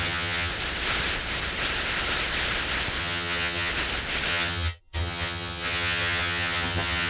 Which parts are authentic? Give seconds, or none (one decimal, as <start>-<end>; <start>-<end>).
0.5-3.0; 3.7-4.3